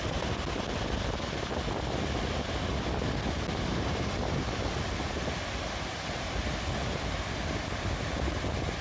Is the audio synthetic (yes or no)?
no